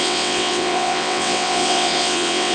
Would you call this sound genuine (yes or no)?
no